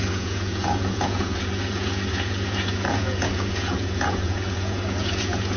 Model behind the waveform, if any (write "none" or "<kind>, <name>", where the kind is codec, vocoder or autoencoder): vocoder, Vocos